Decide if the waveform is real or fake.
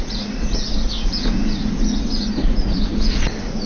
fake